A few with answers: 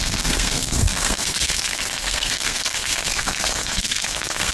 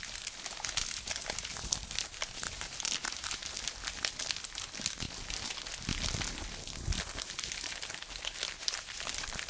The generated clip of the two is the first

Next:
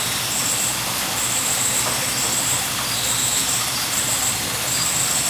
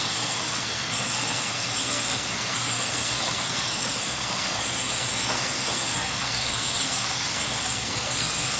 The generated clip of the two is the second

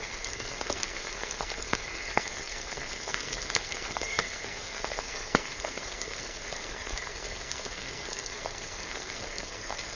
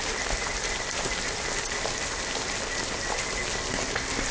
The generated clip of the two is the first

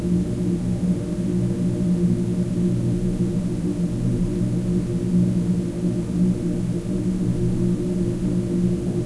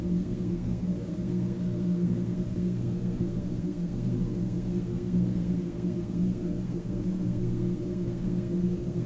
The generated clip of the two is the second